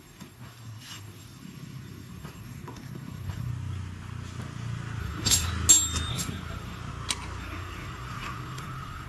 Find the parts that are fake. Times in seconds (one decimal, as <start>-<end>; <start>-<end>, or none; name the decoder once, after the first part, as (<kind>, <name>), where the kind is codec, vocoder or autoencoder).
0.0-3.5 (codec, SNAC); 5.0-5.5; 6.1-6.8; 7.4-9.1